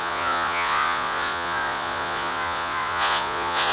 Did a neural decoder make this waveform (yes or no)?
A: yes